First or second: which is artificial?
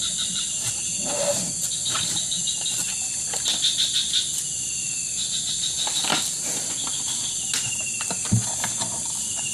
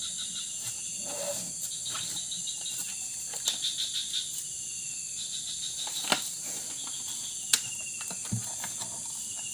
first